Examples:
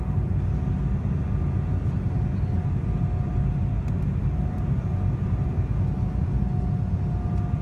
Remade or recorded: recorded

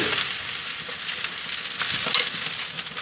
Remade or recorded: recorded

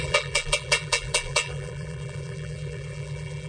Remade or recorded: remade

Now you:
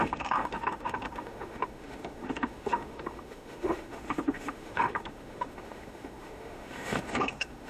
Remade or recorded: remade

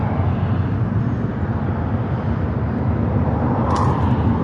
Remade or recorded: recorded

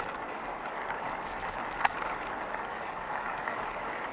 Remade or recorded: remade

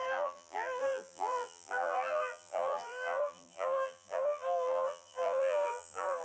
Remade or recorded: remade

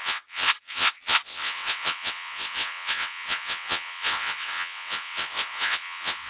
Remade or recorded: remade